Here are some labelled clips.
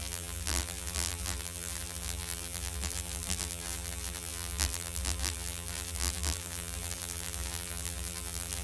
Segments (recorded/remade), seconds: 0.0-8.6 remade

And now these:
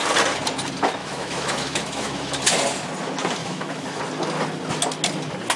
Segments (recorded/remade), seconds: 0.0-1.0 recorded; 1.0-2.4 remade; 2.4-3.4 recorded; 3.4-4.0 remade; 4.0-5.6 recorded

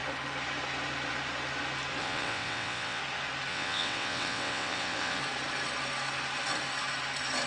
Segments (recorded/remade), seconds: 0.0-2.0 recorded; 2.0-3.0 remade; 3.0-3.5 recorded; 3.5-5.2 remade; 5.2-7.5 recorded

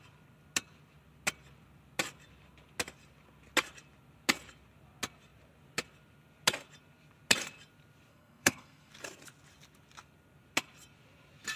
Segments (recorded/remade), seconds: 0.0-8.1 recorded; 8.1-8.9 remade; 8.9-11.6 recorded